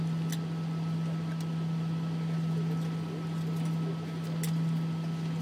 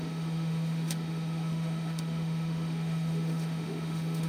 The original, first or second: first